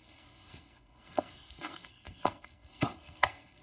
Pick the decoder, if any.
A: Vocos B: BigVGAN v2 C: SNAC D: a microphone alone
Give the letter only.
C